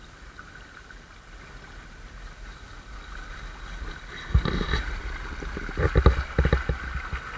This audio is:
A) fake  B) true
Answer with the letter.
B